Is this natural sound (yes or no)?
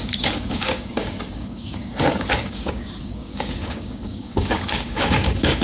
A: no